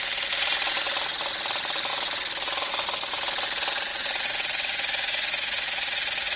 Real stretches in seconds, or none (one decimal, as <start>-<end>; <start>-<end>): 0.0-3.9